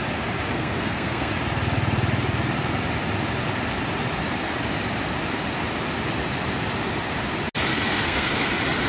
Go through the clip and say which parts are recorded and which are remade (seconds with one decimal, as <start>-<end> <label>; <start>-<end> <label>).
0.0-0.5 recorded; 0.5-1.3 remade; 1.3-7.7 recorded; 7.7-8.5 remade; 8.5-8.9 recorded